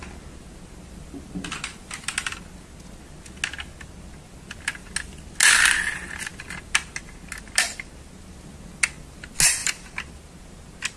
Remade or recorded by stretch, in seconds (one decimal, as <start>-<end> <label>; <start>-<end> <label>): 0.0-11.0 recorded